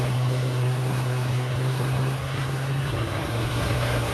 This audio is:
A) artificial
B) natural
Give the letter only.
A